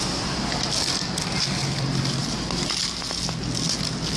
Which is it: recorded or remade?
recorded